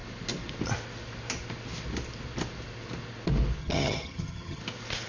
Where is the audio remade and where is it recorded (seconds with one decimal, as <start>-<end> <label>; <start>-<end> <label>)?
0.0-3.6 recorded; 3.6-4.6 remade; 4.6-5.1 recorded